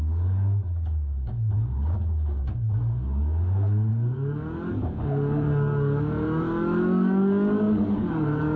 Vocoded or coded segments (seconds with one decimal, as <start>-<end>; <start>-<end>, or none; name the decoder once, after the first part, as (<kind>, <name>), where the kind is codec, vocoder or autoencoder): 0.0-8.6 (codec, DAC)